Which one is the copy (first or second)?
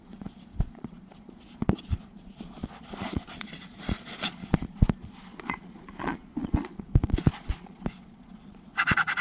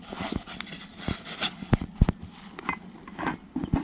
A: first